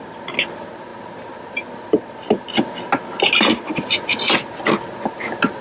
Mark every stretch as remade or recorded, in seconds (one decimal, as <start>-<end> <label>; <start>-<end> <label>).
0.0-5.6 recorded